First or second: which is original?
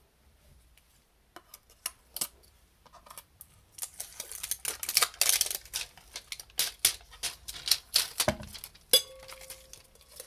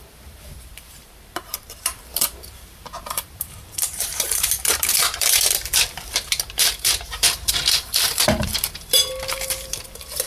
first